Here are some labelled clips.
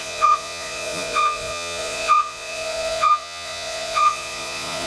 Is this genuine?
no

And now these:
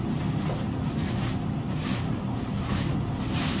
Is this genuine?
yes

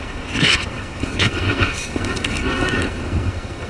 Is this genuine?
no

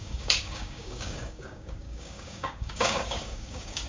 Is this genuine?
no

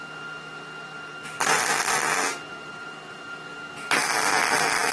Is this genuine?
yes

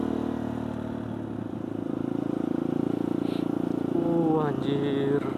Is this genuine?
yes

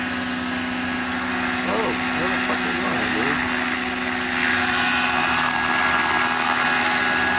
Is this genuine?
yes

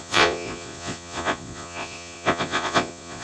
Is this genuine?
no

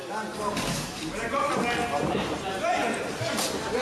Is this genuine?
yes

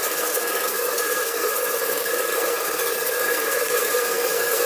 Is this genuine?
no